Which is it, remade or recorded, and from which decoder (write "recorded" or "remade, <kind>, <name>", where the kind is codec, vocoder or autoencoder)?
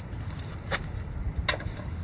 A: recorded